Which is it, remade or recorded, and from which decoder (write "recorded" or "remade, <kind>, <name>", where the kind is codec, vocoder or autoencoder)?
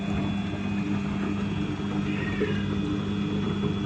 recorded